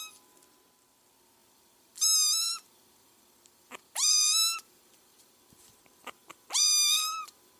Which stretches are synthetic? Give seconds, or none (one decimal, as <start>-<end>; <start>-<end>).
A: 1.4-5.8; 6.2-7.6